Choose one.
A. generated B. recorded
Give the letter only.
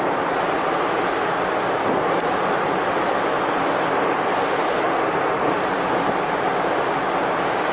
B